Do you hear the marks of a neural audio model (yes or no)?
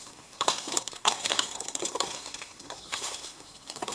yes